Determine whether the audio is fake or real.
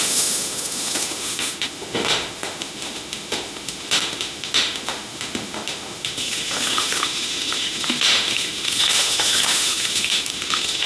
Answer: fake